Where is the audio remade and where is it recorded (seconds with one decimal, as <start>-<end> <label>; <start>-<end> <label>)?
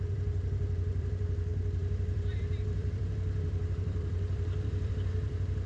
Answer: 0.0-5.7 remade